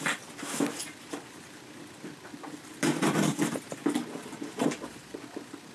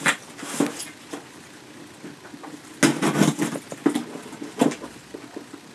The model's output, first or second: first